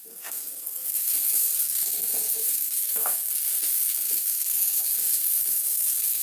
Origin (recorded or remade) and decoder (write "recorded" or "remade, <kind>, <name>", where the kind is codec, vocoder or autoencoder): remade, codec, SNAC